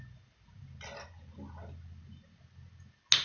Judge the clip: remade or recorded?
recorded